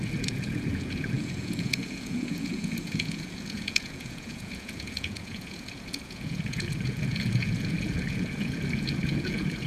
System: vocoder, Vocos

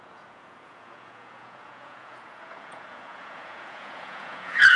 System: vocoder, Vocos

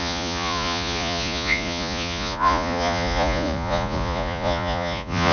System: vocoder, Vocos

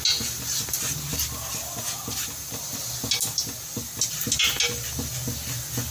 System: none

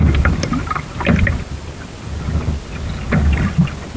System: none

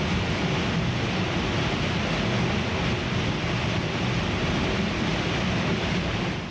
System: none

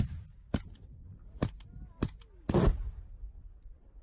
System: none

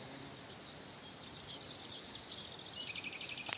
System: none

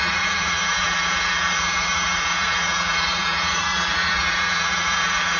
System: vocoder, Vocos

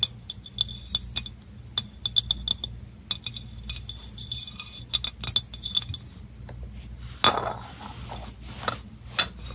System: none